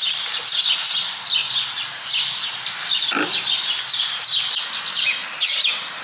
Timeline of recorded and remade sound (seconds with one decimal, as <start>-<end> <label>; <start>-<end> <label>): 0.0-5.2 recorded; 5.2-6.0 remade